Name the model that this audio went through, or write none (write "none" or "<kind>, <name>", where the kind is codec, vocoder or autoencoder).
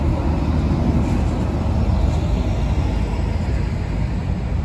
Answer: none